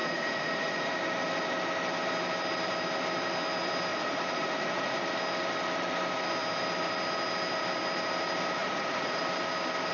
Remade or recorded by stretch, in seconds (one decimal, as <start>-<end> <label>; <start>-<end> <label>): 0.0-0.9 remade; 0.9-3.9 recorded; 3.9-5.0 remade; 5.0-8.6 recorded; 8.6-9.2 remade; 9.2-9.9 recorded